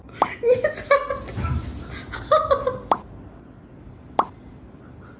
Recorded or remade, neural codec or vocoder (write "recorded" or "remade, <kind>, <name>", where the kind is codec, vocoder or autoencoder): recorded